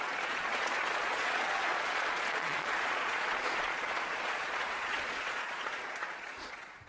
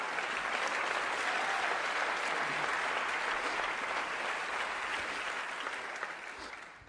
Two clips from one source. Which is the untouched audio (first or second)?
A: second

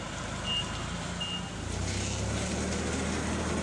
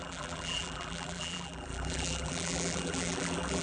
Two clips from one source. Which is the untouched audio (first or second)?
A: first